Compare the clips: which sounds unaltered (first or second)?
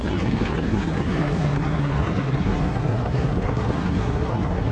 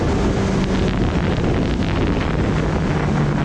second